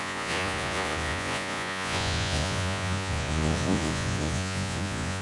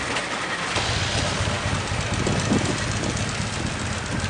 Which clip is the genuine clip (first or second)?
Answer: second